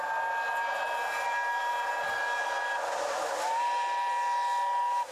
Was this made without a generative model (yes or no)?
yes